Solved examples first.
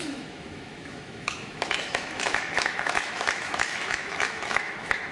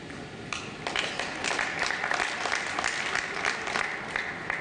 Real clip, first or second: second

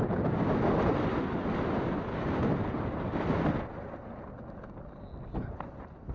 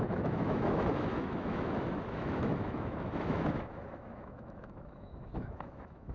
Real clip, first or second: first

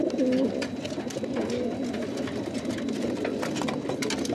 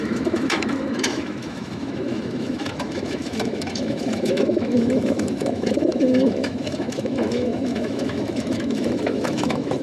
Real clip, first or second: first